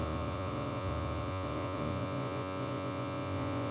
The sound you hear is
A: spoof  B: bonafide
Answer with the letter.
A